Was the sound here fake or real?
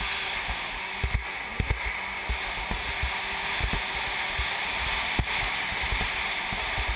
real